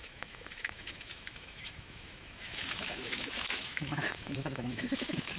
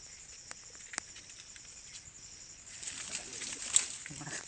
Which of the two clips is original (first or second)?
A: second